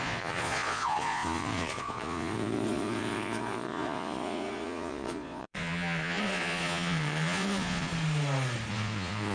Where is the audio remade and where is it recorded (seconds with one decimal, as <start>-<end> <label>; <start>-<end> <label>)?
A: 0.0-7.9 remade; 7.9-8.7 recorded; 8.7-9.3 remade